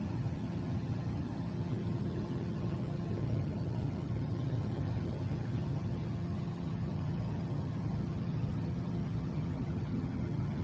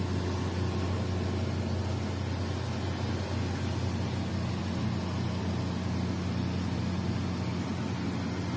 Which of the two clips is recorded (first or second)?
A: second